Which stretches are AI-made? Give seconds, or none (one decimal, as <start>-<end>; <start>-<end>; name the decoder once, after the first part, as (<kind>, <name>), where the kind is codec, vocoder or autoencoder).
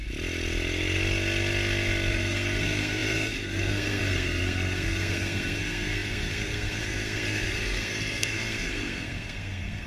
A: 2.1-9.9 (codec, SNAC)